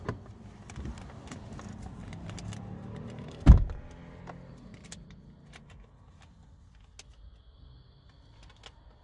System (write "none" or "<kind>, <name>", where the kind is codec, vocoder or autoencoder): none